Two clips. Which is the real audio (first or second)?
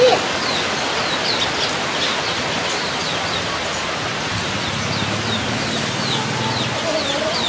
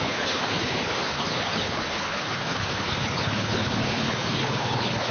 first